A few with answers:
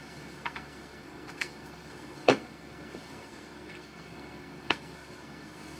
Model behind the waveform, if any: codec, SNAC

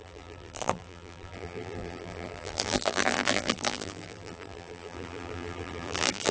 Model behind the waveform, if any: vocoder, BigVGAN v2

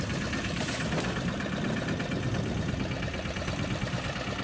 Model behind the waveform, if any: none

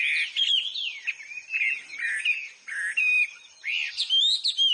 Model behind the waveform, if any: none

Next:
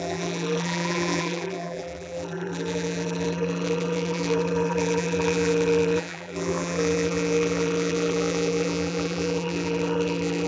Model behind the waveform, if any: vocoder, BigVGAN v2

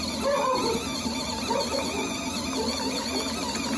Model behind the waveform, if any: none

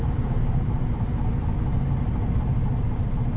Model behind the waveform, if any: none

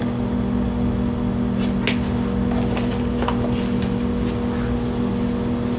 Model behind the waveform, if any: none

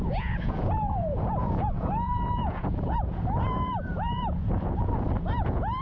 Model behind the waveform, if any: vocoder, Vocos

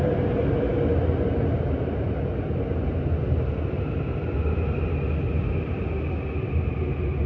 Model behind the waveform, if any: none